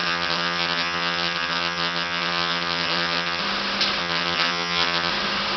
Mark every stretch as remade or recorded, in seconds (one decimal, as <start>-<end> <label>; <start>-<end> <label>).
0.0-3.4 remade; 3.4-4.0 recorded; 4.0-5.1 remade; 5.1-5.6 recorded